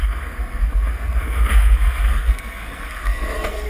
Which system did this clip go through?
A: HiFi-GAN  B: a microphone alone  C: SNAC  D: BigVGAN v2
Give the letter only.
C